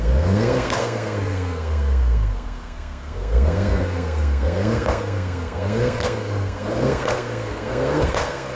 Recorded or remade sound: remade